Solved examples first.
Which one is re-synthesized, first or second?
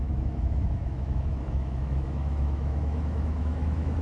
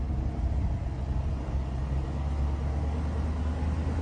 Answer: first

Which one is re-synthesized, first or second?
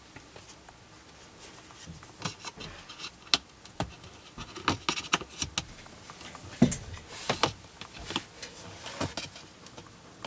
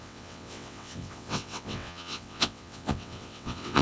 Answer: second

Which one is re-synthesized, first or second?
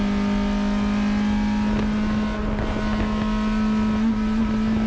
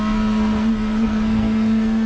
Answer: second